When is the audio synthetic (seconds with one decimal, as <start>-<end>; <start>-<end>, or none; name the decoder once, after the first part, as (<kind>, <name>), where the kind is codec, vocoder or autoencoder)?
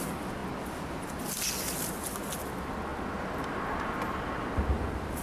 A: none